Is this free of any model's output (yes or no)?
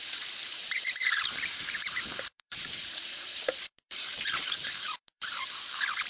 no